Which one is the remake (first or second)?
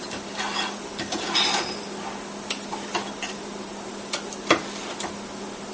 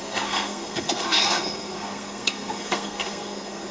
second